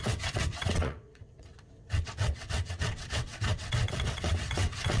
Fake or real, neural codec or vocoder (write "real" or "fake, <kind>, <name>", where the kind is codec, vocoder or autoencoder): fake, vocoder, WaveNeXt